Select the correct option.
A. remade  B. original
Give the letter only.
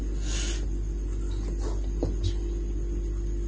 B